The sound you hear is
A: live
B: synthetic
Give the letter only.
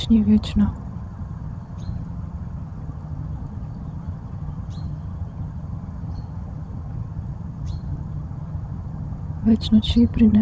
B